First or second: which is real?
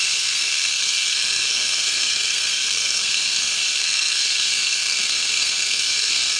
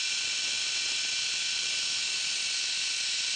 second